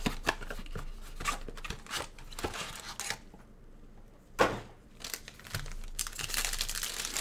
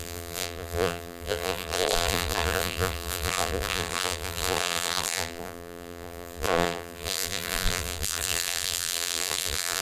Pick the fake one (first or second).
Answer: second